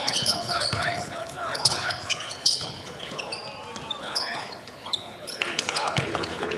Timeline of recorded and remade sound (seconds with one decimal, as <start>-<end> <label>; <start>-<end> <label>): 0.0-3.3 remade; 3.3-4.0 recorded; 4.0-6.6 remade